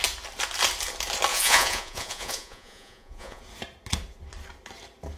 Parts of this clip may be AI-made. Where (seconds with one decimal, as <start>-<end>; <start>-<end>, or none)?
1.3-3.4